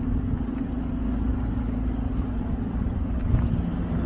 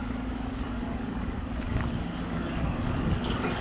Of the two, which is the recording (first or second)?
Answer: first